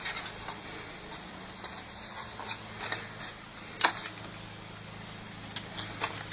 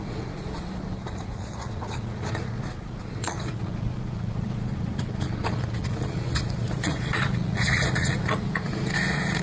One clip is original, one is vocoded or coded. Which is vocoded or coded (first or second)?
second